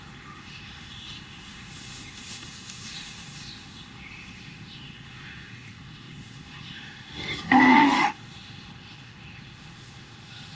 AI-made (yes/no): yes